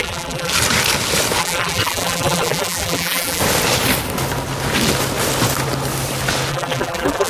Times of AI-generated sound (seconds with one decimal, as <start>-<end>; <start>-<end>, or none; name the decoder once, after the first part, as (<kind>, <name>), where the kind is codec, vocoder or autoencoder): 0.0-0.5 (vocoder, BigVGAN v2); 1.4-3.4; 6.5-7.3